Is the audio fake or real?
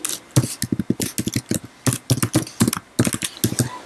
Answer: real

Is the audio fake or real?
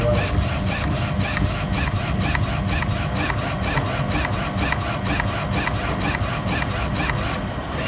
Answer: real